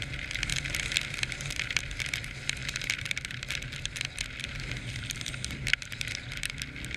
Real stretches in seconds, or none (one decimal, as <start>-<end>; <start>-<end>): 0.0-7.0

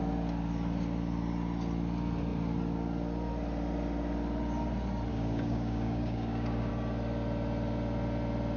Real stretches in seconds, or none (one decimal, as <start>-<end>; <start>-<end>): 0.0-5.1; 6.7-8.6

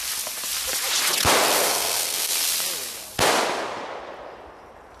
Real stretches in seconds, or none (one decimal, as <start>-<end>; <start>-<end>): 0.0-1.6; 2.3-5.0